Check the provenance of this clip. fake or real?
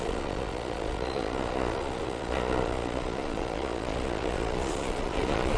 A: fake